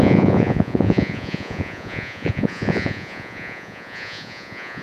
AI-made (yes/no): yes